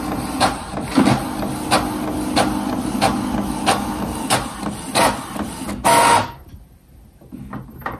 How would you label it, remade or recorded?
recorded